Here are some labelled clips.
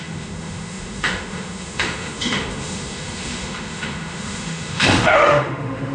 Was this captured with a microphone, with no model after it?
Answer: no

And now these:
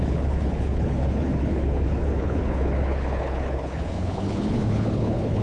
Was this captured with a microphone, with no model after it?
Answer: no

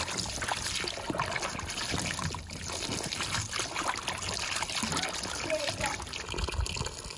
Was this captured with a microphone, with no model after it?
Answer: yes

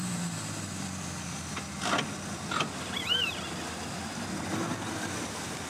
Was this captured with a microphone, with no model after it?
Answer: yes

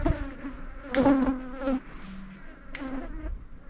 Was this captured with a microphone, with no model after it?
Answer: yes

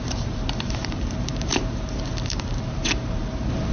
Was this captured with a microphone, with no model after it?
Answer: no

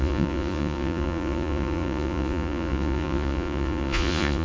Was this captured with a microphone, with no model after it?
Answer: no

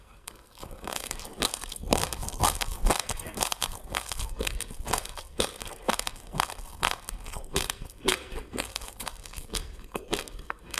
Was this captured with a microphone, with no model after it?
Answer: no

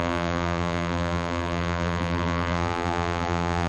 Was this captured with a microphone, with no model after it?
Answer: no